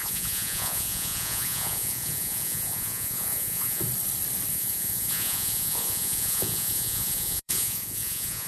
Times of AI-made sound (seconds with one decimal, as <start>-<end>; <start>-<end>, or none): 0.0-3.8; 4.5-8.5